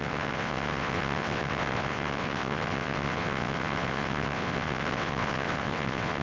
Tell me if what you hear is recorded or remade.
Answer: remade